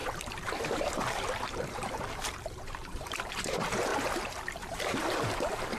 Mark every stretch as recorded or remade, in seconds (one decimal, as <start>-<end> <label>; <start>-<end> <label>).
0.0-3.9 remade; 3.9-4.6 recorded; 4.6-5.8 remade